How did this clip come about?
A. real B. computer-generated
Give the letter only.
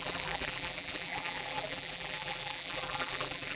B